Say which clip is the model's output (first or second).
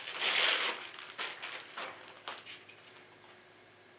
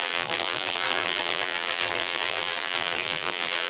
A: second